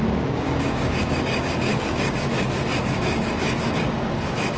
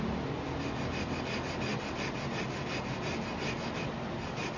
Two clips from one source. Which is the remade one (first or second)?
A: first